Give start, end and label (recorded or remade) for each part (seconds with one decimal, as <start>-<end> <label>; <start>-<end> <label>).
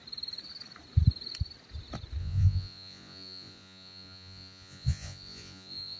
0.0-2.2 recorded; 2.2-6.0 remade